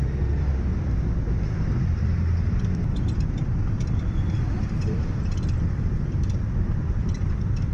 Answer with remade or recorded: remade